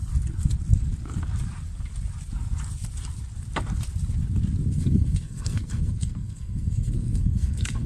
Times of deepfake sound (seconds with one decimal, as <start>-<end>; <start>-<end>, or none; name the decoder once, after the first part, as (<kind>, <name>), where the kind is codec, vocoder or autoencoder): 4.7-7.9 (codec, SNAC)